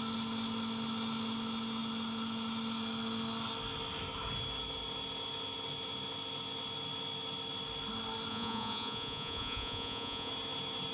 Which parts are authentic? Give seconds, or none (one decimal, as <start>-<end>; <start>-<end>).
0.0-8.3; 10.3-10.9